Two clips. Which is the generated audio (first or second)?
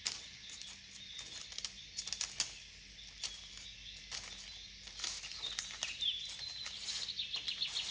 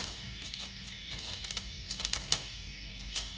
second